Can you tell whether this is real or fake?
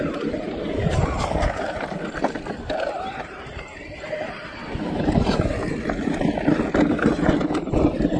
fake